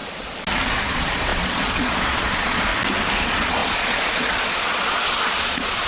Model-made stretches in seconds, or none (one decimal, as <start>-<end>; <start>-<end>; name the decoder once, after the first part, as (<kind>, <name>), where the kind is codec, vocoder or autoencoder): 0.9-2.7 (vocoder, Vocos); 3.2-5.9